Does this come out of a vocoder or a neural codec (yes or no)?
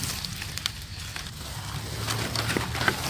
no